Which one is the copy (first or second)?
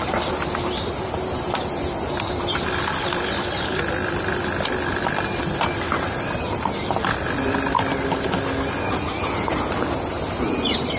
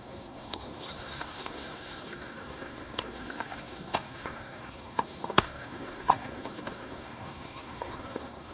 second